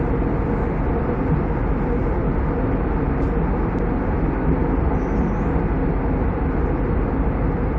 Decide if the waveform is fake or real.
real